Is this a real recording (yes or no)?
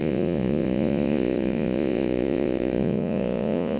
no